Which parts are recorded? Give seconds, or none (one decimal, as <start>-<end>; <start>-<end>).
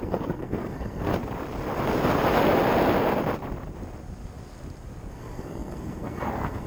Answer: 1.1-5.1